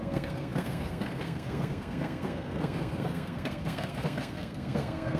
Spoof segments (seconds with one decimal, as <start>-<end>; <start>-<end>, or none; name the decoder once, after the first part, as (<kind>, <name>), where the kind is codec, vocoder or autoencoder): 0.0-5.2 (codec, SNAC)